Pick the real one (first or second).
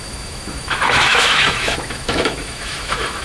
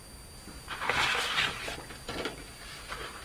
second